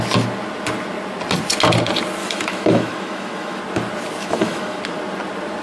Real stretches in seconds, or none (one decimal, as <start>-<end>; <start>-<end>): 0.0-2.2; 3.6-4.2; 4.8-5.6